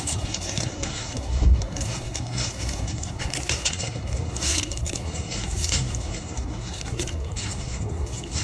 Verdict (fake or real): fake